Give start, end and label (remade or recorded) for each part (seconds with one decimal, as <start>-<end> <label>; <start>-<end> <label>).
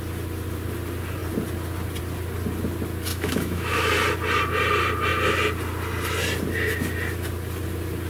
0.0-3.1 recorded; 3.1-3.9 remade; 3.9-8.1 recorded